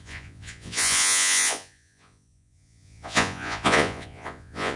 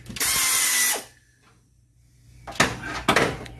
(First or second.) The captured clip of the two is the second